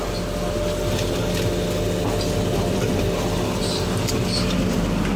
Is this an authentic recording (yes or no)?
yes